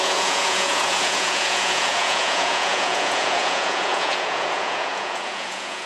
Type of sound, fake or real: fake